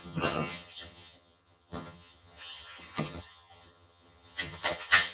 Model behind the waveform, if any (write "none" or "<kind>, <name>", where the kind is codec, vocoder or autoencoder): vocoder, HiFi-GAN